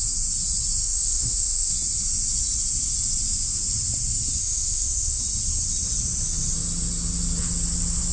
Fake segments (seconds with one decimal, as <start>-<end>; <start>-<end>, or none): 0.8-1.7; 4.4-5.2

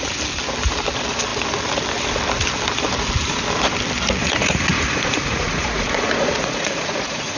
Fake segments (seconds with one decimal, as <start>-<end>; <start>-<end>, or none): 4.2-7.4

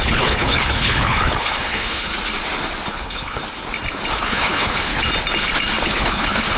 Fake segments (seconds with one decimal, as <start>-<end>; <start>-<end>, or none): 0.0-2.1; 2.9-3.4; 4.1-4.9; 5.8-6.6

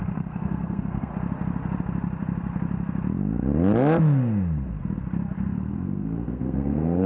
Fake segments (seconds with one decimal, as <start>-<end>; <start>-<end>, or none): 0.0-1.1; 5.4-7.1

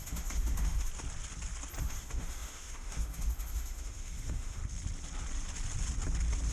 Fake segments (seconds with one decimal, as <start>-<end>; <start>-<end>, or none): 0.0-0.9; 1.8-4.6

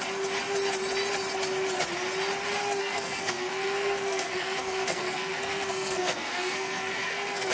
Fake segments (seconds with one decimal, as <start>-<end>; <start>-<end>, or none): 2.8-7.5

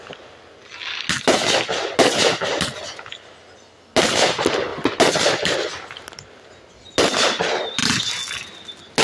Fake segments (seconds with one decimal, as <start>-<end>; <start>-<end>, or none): none

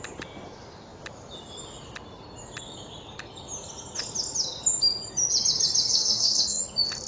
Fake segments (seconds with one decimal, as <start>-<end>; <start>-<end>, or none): 5.9-6.6